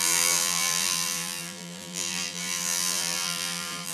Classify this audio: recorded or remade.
remade